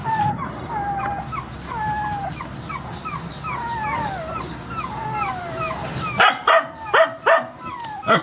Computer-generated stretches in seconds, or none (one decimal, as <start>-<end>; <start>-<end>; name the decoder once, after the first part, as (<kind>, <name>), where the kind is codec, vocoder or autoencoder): none